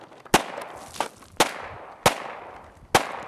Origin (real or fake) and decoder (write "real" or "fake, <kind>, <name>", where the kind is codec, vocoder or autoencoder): real